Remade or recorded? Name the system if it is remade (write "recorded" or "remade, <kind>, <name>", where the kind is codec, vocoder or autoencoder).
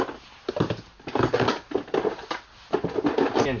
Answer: recorded